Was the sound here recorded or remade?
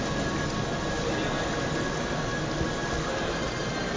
recorded